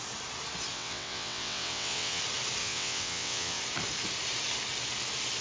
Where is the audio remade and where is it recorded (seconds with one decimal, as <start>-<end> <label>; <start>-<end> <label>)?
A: 0.0-0.7 recorded; 0.7-2.2 remade; 2.2-2.6 recorded; 2.6-3.6 remade; 3.6-5.4 recorded